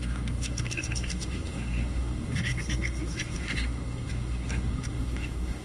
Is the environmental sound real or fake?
fake